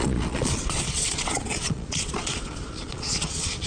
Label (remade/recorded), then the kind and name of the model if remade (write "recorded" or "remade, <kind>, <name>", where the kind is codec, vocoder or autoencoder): remade, vocoder, Vocos